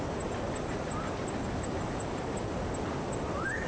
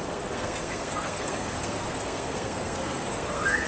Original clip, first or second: first